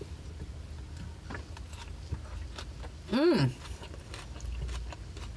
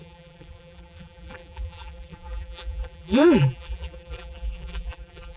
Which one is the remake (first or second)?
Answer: second